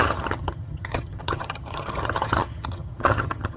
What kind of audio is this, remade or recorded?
remade